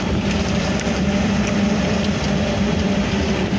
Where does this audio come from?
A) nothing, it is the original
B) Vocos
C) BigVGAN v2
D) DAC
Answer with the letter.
C